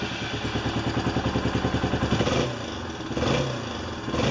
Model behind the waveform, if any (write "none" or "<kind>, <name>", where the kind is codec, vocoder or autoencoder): none